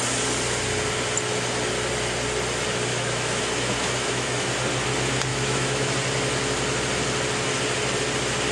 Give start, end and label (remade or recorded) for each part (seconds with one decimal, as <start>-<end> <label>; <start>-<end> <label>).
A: 0.0-2.9 recorded; 2.9-4.5 remade; 4.5-5.3 recorded; 5.3-5.9 remade; 5.9-8.5 recorded